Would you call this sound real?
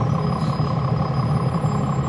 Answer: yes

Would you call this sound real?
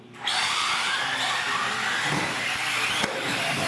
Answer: yes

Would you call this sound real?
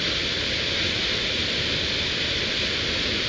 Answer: yes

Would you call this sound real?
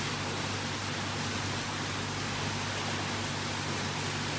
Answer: yes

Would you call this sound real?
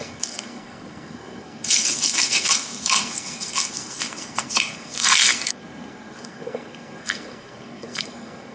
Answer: no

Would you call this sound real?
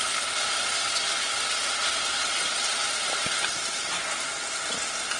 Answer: yes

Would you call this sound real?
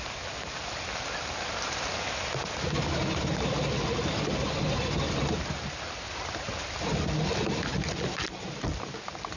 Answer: yes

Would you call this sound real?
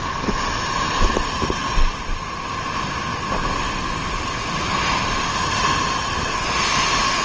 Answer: yes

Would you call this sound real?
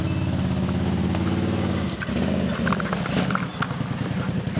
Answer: yes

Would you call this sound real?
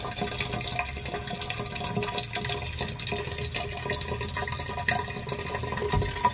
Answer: yes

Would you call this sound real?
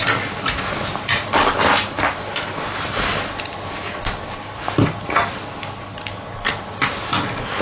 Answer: yes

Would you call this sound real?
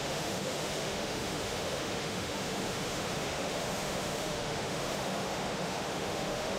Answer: no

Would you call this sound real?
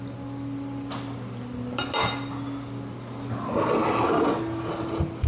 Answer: yes